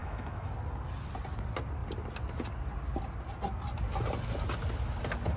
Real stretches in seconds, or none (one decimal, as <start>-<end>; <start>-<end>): 0.5-5.4